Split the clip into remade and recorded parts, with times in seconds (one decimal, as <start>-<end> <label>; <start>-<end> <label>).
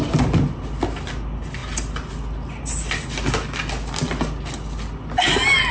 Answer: 0.0-5.7 recorded